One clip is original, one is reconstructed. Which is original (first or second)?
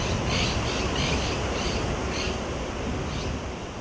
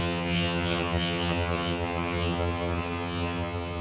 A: first